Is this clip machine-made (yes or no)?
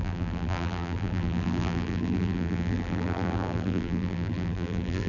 yes